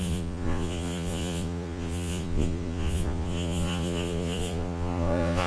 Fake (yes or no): yes